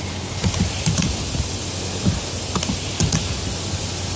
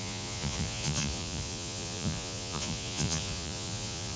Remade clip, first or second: second